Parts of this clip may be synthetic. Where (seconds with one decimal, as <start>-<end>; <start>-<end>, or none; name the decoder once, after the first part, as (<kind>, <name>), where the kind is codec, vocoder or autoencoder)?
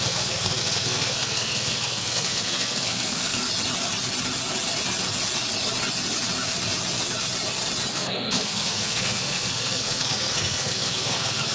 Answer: 0.0-3.4 (codec, SNAC); 7.9-11.5